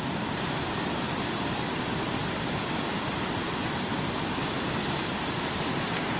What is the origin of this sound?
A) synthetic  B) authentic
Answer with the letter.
A